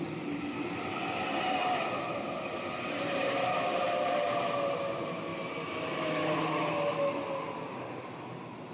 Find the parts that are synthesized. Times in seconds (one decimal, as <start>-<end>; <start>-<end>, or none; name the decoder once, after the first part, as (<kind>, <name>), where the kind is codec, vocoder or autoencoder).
none